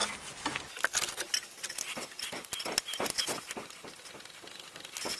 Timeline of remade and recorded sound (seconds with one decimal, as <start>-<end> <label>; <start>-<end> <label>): 0.0-5.2 recorded